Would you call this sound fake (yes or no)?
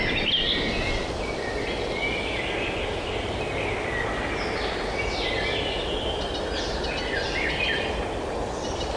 no